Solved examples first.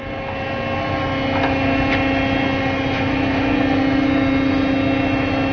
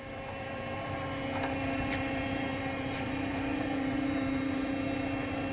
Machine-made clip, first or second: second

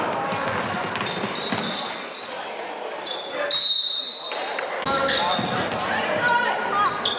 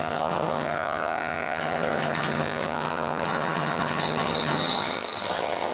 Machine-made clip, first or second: second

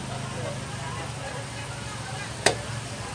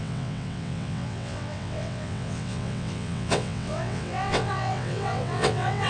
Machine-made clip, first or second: second